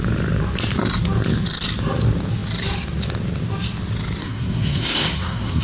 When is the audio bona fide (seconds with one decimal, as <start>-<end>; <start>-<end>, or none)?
0.0-4.2